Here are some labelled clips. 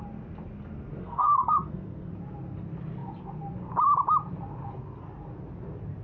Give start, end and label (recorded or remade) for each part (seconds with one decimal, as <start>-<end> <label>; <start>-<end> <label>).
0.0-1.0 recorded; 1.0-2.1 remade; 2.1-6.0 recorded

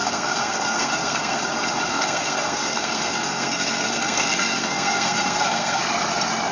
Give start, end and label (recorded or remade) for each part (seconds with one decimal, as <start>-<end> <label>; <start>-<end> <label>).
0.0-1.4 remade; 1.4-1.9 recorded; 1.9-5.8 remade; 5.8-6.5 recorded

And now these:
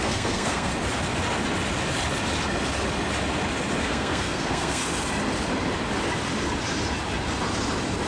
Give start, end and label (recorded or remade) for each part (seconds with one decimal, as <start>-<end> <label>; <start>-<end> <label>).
0.0-0.7 remade; 0.7-3.8 recorded; 3.8-4.8 remade; 4.8-8.1 recorded

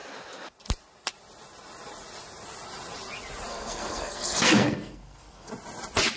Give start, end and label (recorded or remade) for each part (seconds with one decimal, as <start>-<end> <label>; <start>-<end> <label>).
0.0-3.5 recorded; 3.5-5.5 remade; 5.5-6.2 recorded

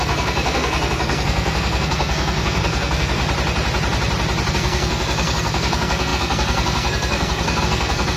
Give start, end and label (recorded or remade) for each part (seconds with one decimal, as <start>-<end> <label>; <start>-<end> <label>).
0.0-3.2 remade; 3.2-4.5 recorded; 4.5-8.2 remade